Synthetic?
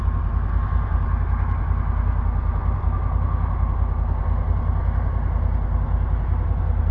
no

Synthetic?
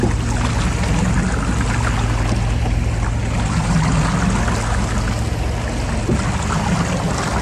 no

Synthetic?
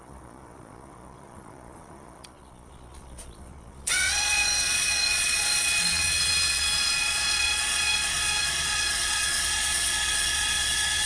yes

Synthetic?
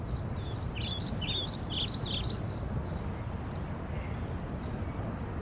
no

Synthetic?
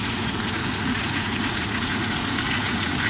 yes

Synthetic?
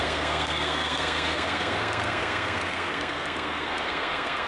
yes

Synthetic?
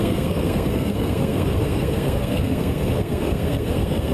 yes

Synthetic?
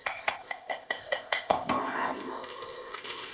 yes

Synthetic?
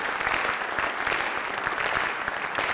no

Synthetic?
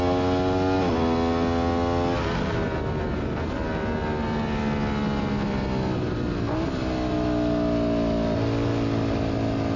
no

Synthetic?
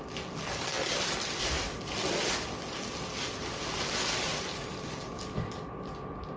no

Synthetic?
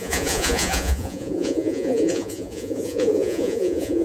yes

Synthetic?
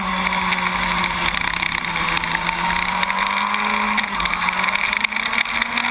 no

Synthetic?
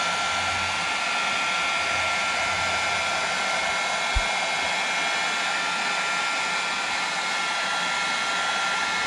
no